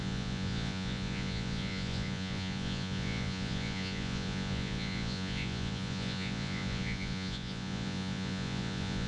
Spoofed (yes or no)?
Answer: yes